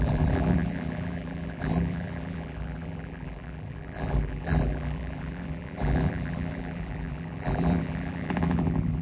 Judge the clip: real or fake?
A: fake